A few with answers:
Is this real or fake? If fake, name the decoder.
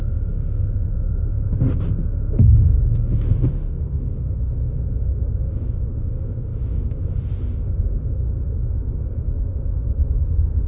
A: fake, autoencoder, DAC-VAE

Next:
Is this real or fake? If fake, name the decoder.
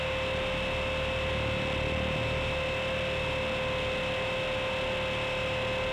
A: real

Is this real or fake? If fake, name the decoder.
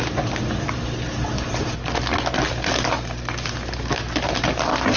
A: real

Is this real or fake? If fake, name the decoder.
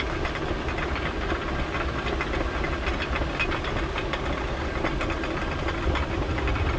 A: real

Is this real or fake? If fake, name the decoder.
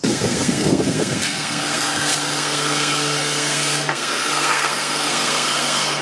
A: fake, codec, SNAC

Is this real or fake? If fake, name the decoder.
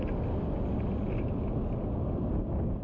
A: real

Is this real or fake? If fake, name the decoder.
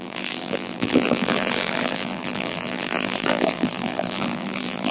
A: fake, vocoder, BigVGAN v2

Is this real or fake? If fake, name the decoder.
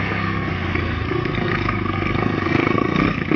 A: fake, codec, SNAC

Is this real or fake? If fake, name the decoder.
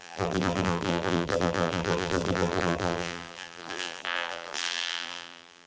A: fake, vocoder, BigVGAN v2